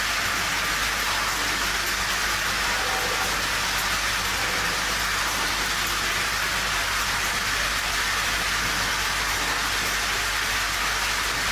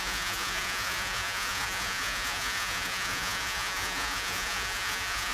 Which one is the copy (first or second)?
second